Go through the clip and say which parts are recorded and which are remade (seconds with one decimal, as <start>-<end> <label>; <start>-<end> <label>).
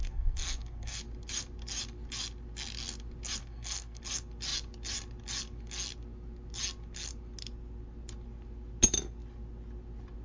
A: 0.0-1.0 remade; 1.0-3.4 recorded; 3.4-4.0 remade; 4.0-10.2 recorded